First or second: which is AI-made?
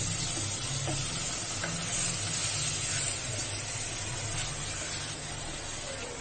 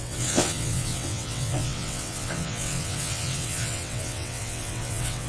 second